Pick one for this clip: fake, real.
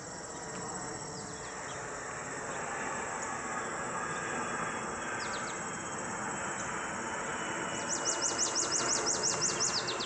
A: real